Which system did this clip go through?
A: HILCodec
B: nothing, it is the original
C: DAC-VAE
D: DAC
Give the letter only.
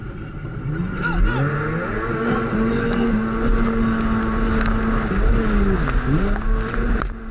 B